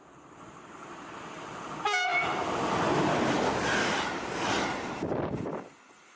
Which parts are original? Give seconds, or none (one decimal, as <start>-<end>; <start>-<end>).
0.0-6.2